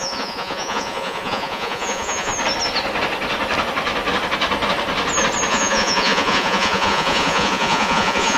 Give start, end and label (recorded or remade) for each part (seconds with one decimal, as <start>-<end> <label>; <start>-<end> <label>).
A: 0.0-2.3 remade; 2.3-5.5 recorded; 5.5-8.4 remade